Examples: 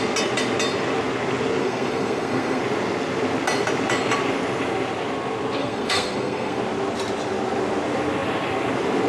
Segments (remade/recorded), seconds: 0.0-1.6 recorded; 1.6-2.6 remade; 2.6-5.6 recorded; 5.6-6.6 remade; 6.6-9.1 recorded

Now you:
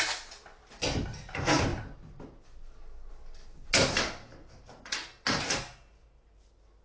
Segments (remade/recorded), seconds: 0.0-6.8 recorded

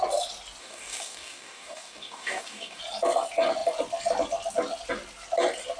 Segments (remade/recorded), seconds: 0.0-0.6 recorded; 0.6-2.8 remade; 2.8-5.8 recorded

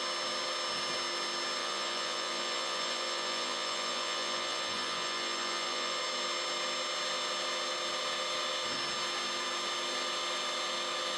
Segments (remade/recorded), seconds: 0.0-1.6 recorded; 1.6-6.0 remade; 6.0-11.2 recorded

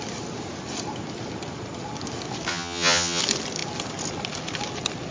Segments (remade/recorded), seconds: 0.0-2.5 recorded; 2.5-3.2 remade; 3.2-5.1 recorded

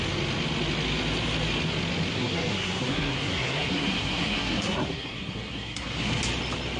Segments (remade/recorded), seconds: 0.0-2.1 recorded; 2.1-6.2 remade; 6.2-6.8 recorded

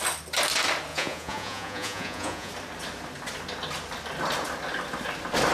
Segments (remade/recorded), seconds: 0.0-0.9 recorded; 0.9-2.5 remade; 2.5-5.5 recorded

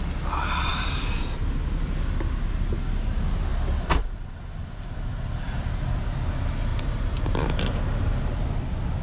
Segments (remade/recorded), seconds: 0.0-0.7 recorded; 0.7-1.5 remade; 1.5-6.7 recorded; 6.7-8.2 remade; 8.2-9.0 recorded